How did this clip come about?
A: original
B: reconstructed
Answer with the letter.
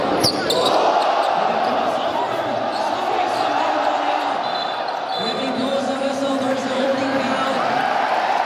B